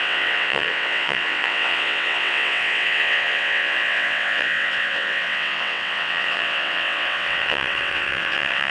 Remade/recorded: remade